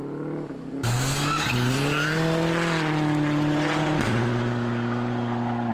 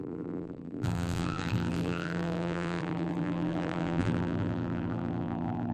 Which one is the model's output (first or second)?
second